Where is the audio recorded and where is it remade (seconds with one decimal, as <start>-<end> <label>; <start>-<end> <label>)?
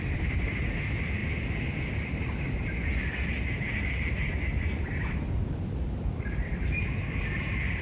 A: 0.0-7.8 recorded